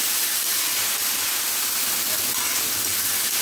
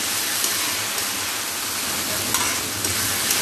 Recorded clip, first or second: second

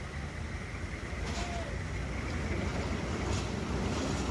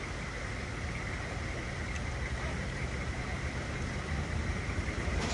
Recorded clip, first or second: first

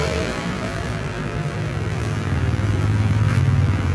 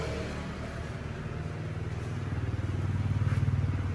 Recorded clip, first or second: second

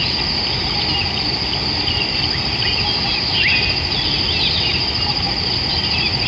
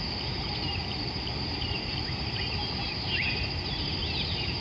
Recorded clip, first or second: first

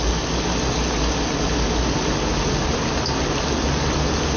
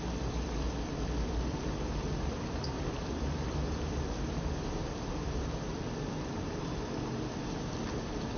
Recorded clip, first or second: first